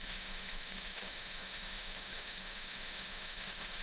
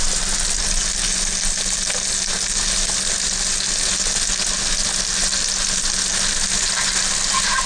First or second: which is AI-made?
first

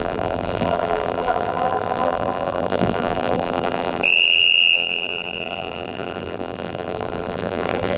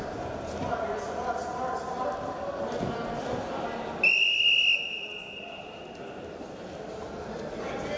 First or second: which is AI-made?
first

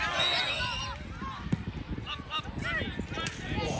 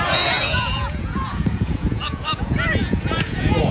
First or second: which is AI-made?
second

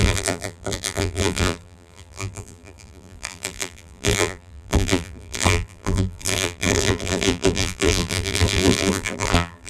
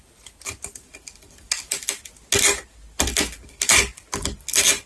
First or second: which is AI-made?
first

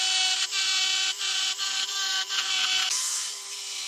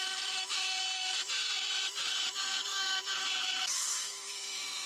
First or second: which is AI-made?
second